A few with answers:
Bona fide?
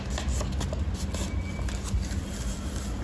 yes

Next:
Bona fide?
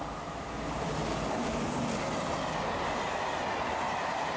yes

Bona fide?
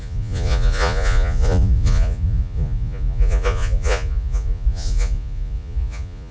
no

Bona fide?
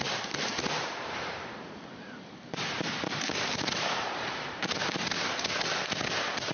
no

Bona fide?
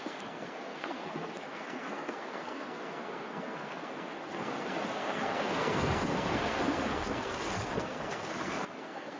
no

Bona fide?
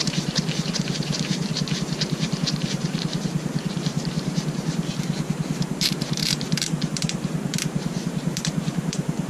no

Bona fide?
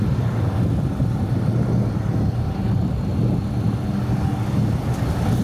yes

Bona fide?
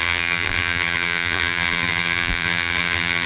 no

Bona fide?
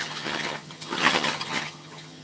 no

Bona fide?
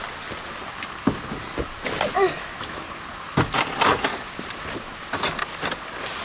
yes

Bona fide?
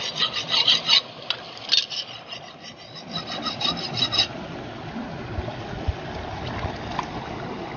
yes